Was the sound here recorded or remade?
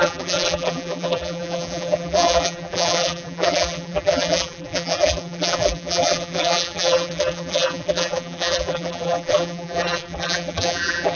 remade